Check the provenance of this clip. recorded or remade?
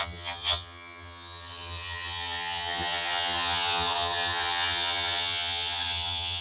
remade